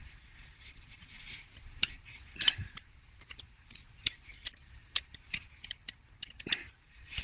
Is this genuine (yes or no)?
no